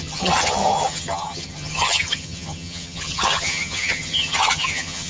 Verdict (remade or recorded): remade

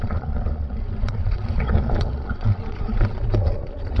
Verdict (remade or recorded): remade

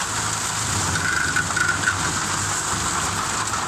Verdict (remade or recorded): recorded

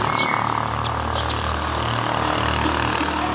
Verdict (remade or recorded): recorded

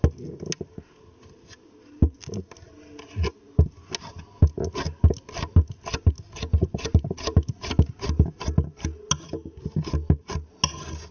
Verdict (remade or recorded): recorded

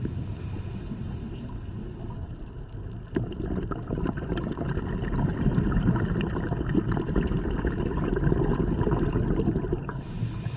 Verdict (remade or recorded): recorded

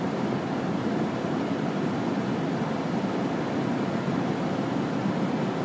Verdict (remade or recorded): recorded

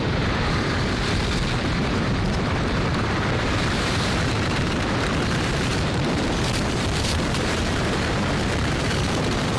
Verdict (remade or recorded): remade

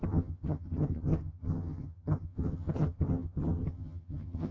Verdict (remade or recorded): remade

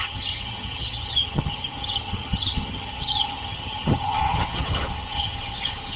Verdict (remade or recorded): remade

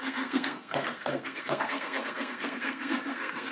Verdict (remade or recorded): remade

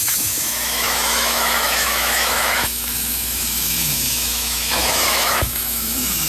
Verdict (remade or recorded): remade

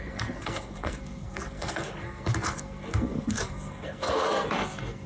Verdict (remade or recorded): remade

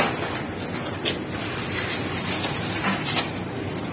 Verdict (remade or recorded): recorded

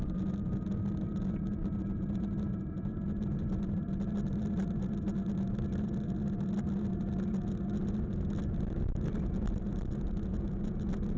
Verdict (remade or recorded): recorded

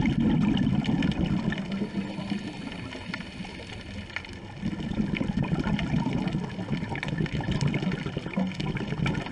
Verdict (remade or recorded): recorded